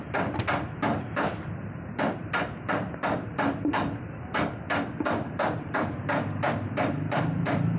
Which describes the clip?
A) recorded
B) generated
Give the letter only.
B